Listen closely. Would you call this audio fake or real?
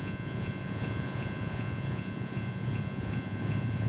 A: fake